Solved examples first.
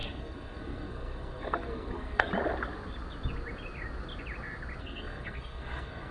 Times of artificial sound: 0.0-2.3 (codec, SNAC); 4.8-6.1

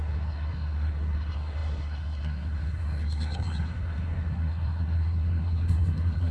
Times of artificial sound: 0.0-6.3 (codec, SNAC)

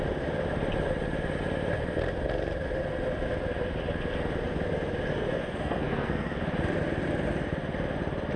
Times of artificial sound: 5.1-6.4 (codec, SNAC)

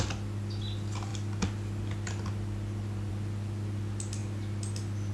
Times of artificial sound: none